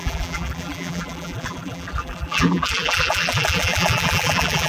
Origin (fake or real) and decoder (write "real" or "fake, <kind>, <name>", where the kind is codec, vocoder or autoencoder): fake, vocoder, BigVGAN v2